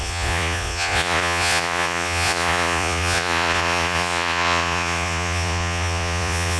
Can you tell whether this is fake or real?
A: fake